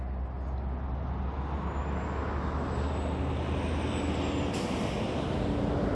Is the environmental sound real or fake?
real